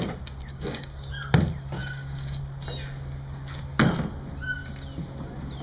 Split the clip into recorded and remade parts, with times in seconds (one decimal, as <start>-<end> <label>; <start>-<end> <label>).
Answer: 0.0-0.5 recorded; 0.5-1.1 remade; 1.1-1.8 recorded; 1.8-2.4 remade; 2.4-5.6 recorded